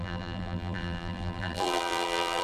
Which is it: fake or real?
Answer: fake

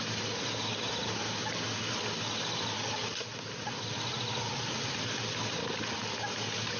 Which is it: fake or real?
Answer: real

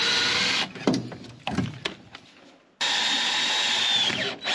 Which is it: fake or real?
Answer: real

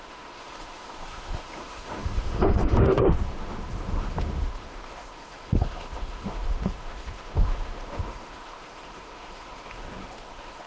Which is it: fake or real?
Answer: fake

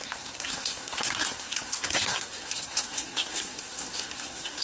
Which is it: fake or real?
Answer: fake